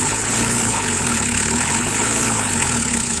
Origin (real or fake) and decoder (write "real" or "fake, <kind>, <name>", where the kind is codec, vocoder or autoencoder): fake, codec, HILCodec